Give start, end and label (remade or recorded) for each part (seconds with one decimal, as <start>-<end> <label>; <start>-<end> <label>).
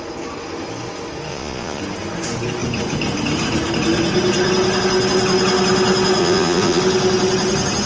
0.0-1.3 recorded; 1.3-1.8 remade; 1.8-6.2 recorded; 6.2-6.8 remade; 6.8-7.9 recorded